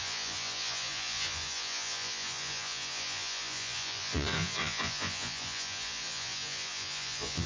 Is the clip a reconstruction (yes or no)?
yes